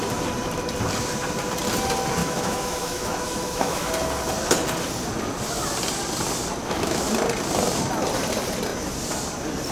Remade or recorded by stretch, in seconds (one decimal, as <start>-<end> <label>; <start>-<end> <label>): 0.0-2.2 recorded; 2.2-3.9 remade; 3.9-6.6 recorded; 6.6-7.1 remade; 7.1-9.7 recorded